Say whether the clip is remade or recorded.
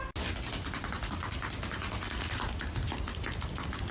recorded